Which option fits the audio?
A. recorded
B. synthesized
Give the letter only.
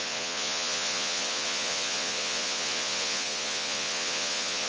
B